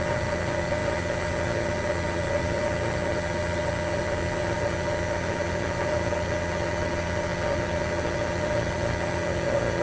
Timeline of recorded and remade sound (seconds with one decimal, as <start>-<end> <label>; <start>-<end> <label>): 0.0-9.8 remade